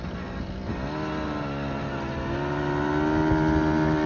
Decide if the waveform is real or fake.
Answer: real